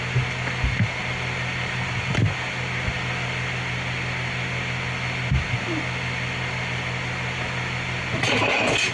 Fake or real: real